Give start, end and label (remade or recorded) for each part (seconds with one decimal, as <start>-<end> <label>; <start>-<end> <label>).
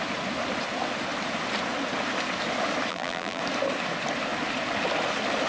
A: 0.0-2.9 recorded; 2.9-3.4 remade; 3.4-5.5 recorded